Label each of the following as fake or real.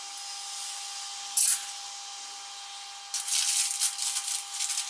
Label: real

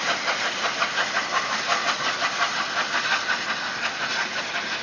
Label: real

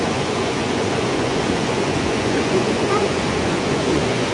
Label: fake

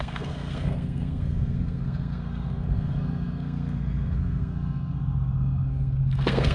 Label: fake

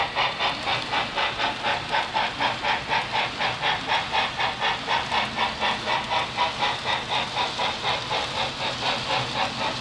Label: real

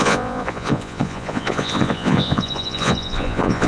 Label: fake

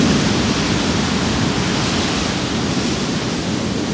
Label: real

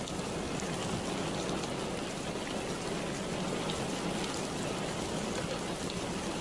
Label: real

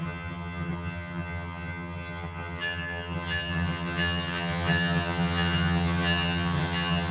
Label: fake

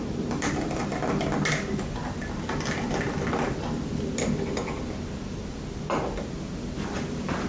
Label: real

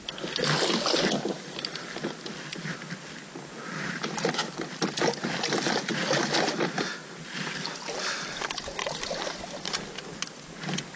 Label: real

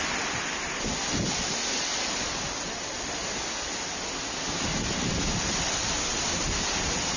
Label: real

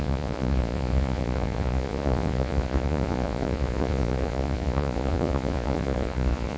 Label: fake